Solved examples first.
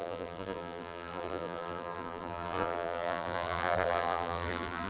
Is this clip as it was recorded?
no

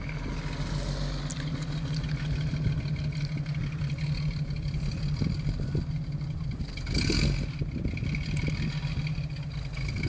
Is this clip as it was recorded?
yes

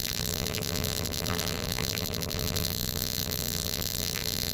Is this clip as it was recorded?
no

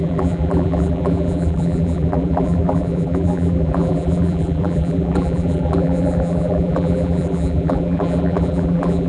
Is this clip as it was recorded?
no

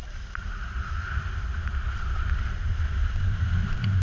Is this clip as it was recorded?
yes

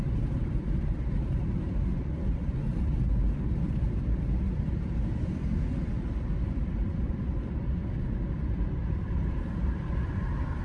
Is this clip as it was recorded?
no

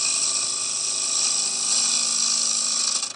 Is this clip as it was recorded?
yes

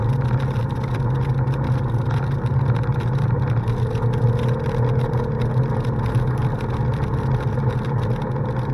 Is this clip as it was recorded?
yes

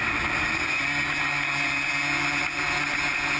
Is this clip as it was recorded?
yes